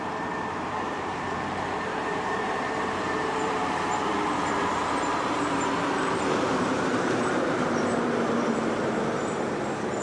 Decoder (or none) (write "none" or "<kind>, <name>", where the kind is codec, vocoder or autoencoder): vocoder, BigVGAN v2